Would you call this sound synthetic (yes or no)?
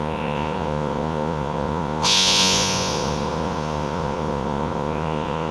yes